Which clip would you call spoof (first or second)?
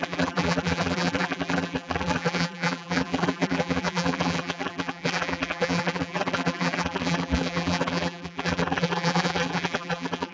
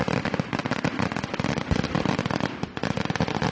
first